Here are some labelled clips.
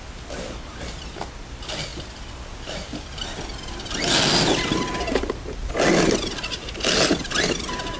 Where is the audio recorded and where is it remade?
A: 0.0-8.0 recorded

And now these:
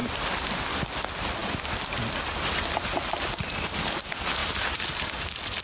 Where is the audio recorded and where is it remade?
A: 0.0-5.6 recorded

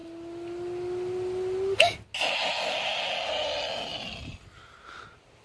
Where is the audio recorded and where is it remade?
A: 0.0-5.4 recorded

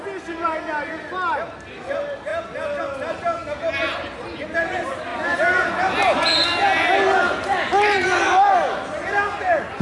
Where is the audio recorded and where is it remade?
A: 0.0-9.8 recorded

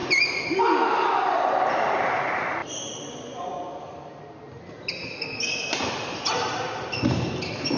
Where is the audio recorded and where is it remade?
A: 0.0-7.8 recorded